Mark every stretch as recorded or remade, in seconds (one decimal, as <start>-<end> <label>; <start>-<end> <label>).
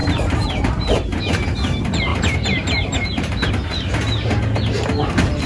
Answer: 0.0-1.2 remade; 1.2-2.1 recorded; 2.1-3.5 remade; 3.5-5.5 recorded